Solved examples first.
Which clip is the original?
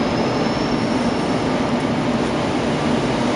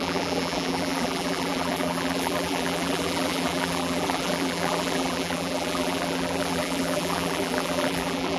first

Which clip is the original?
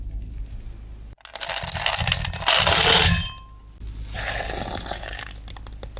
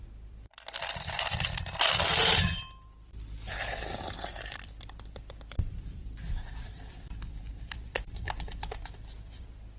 first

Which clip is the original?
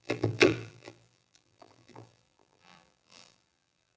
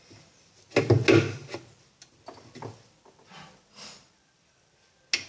second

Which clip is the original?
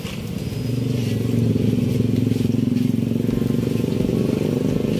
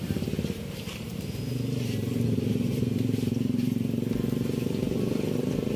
first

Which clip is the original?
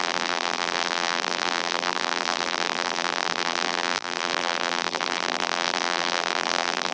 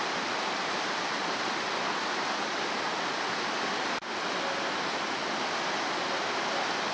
second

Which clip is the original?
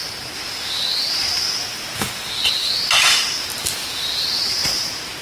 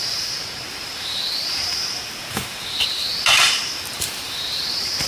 first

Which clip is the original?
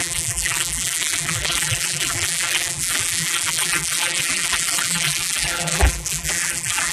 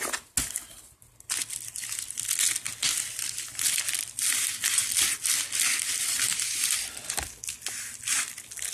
second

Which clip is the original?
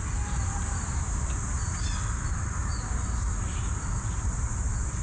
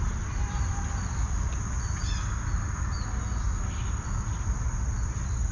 second